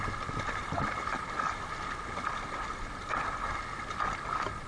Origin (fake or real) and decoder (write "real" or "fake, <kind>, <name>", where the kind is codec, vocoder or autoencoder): real